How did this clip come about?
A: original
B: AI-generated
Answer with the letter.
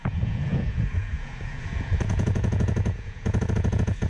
B